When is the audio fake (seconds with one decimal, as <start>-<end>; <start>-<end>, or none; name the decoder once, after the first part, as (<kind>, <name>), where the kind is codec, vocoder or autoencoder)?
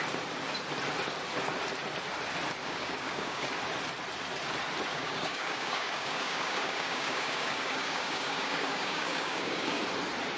2.6-3.5 (codec, DAC); 4.9-9.8